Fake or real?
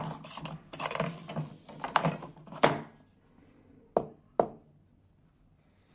real